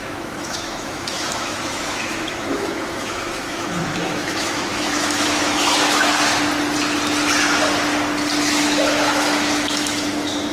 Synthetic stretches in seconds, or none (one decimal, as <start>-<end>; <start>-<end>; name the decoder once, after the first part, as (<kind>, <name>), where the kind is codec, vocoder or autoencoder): 0.0-6.1 (autoencoder, DAC-VAE); 8.4-10.5